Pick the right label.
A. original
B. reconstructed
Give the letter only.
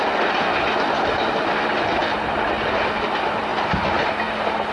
A